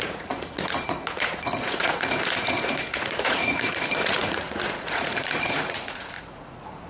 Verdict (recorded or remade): remade